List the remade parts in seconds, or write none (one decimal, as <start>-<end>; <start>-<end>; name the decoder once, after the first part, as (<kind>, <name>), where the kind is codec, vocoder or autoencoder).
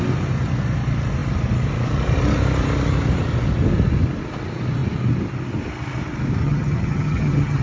6.4-7.6 (vocoder, HiFi-GAN)